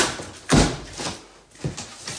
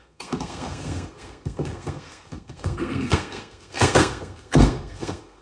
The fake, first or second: second